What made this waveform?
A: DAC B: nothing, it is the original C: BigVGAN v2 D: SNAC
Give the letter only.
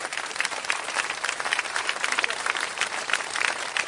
C